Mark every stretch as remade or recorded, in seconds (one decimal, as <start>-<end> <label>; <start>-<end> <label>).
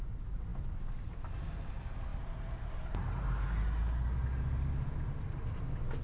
0.0-6.0 recorded